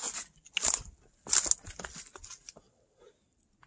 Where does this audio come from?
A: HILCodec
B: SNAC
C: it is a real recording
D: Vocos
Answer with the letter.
C